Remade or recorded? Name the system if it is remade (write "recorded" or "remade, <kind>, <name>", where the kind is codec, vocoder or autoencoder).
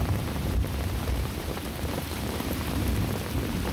remade, vocoder, BigVGAN v2